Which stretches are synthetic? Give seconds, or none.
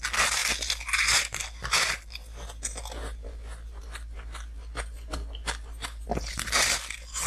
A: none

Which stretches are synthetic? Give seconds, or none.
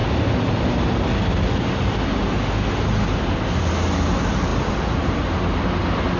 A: 4.5-5.2 (vocoder, BigVGAN v2)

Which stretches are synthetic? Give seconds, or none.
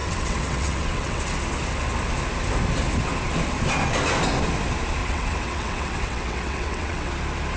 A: 0.0-1.2 (vocoder, WaveNeXt); 5.0-7.1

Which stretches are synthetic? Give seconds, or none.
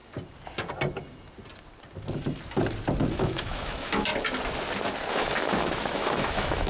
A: 3.1-4.1 (autoencoder, DAC-VAE); 5.1-6.7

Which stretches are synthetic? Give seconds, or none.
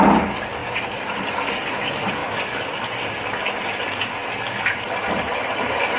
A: none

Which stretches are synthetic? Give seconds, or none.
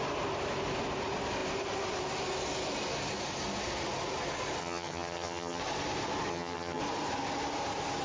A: 4.6-5.6 (vocoder, HiFi-GAN); 6.3-6.8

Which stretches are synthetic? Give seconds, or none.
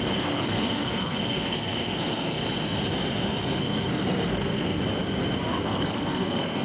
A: 0.0-2.4 (codec, SNAC); 3.6-4.8; 5.6-6.6